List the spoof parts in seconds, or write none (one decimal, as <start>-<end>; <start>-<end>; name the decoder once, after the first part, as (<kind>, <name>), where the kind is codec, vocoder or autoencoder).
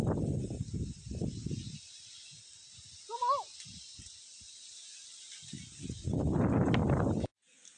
none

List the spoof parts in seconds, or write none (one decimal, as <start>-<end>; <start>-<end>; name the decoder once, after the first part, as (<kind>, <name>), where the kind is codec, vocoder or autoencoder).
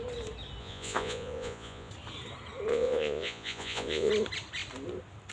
0.6-1.9 (vocoder, Vocos); 2.7-4.1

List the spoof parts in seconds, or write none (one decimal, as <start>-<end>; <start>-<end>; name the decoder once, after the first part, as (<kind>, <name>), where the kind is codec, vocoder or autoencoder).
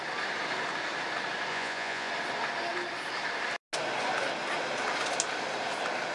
1.5-2.1 (vocoder, Vocos)